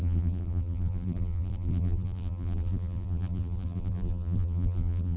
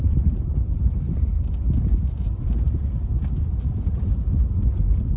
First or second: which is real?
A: second